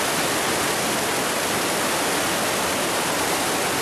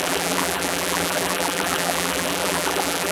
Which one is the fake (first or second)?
second